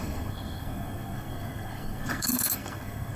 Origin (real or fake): fake